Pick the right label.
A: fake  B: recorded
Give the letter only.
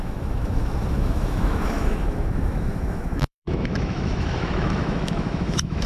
A